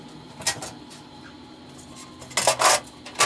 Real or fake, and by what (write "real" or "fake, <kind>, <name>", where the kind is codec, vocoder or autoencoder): real